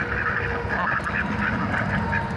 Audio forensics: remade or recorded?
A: recorded